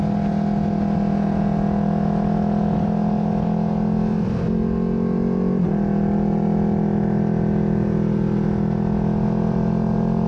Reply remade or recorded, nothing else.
recorded